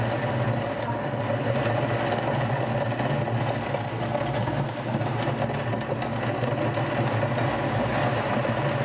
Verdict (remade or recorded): recorded